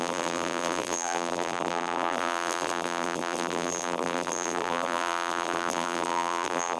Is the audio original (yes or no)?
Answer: no